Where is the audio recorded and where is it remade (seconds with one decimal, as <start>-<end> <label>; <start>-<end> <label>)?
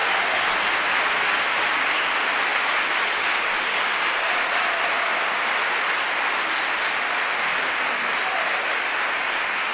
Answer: 0.0-9.7 recorded